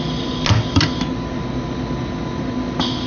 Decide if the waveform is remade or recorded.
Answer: recorded